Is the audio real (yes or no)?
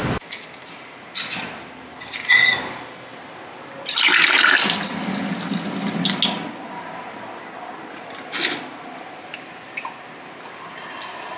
yes